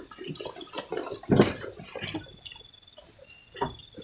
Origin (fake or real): real